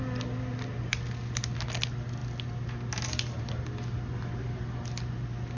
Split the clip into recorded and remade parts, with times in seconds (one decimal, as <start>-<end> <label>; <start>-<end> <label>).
0.0-5.6 recorded